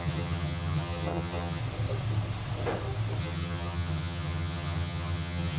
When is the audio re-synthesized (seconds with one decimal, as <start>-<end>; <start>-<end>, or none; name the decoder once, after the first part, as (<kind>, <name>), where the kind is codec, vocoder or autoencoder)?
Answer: 0.0-1.6 (vocoder, HiFi-GAN); 3.2-5.6